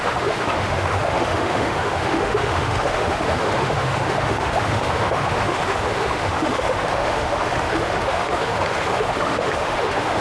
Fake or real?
fake